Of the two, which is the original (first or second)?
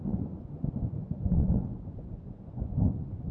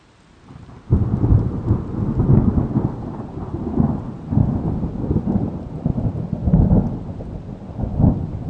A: second